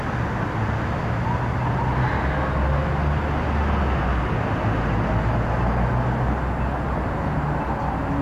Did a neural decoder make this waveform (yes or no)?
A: no